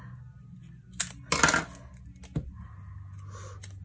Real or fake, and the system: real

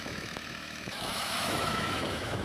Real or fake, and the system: fake, autoencoder, DAC-VAE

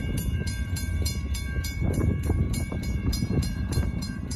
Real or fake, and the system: fake, vocoder, BigVGAN v2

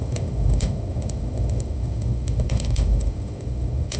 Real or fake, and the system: fake, autoencoder, DAC-VAE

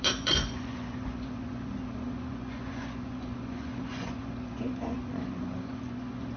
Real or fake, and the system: fake, vocoder, Vocos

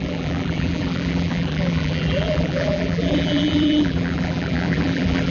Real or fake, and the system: fake, vocoder, BigVGAN v2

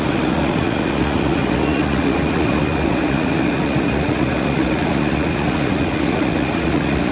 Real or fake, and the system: fake, vocoder, Vocos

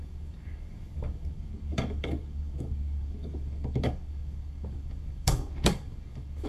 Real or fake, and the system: fake, codec, DAC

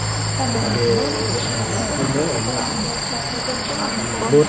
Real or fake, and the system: real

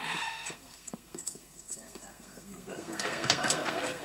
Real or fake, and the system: fake, codec, SNAC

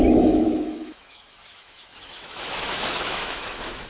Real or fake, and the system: fake, autoencoder, DAC-VAE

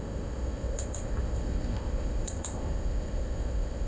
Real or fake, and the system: fake, codec, ZipCodec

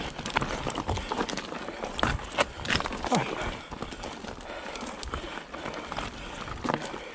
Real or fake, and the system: real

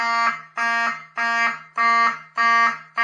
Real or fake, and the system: real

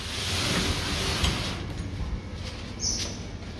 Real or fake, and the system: real